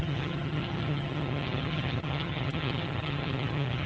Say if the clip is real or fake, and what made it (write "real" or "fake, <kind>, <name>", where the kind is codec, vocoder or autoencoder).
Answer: fake, vocoder, HiFi-GAN